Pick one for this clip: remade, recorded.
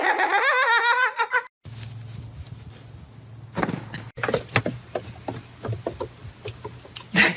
recorded